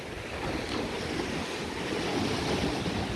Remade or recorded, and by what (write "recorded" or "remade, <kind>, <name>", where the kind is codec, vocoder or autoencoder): remade, vocoder, BigVGAN v2